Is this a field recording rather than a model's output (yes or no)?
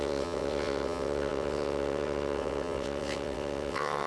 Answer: no